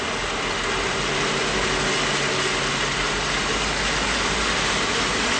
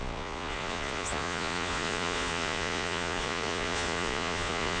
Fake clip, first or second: second